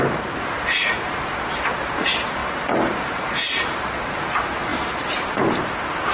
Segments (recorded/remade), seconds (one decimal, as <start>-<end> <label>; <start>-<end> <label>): 0.0-6.1 remade